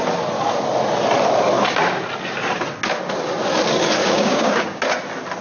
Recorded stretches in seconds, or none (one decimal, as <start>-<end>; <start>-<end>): 0.0-4.0; 4.8-5.4